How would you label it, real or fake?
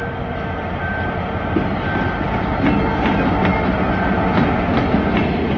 real